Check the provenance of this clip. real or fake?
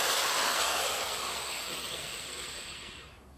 fake